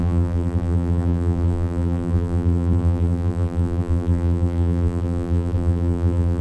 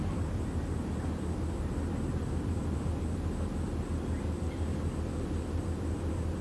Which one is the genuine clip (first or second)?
second